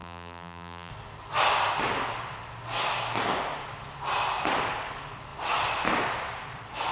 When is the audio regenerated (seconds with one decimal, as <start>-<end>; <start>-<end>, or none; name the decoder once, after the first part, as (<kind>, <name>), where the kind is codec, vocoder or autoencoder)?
0.0-0.9 (vocoder, BigVGAN v2)